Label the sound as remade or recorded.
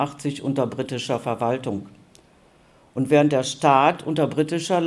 recorded